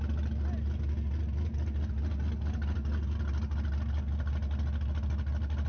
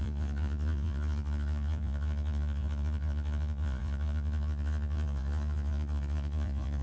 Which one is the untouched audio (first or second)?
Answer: first